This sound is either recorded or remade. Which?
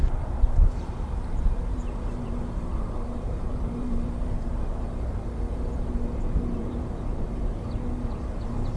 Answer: remade